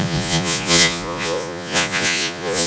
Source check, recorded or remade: remade